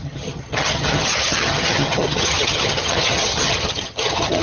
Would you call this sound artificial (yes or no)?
yes